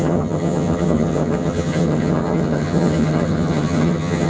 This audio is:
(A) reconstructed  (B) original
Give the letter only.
A